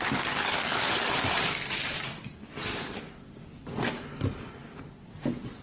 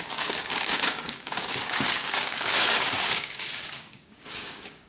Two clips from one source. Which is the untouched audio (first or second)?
first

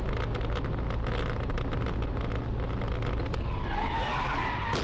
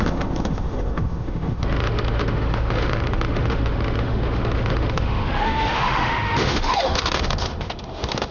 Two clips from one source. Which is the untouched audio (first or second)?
first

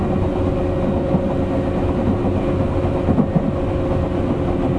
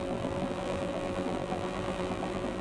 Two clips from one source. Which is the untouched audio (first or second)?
first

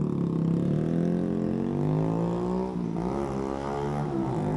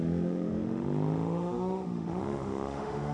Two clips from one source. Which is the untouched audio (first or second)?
first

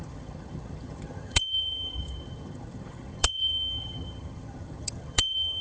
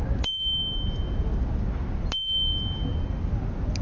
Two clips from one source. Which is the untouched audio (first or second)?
second